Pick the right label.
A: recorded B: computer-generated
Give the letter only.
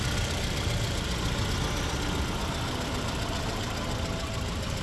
A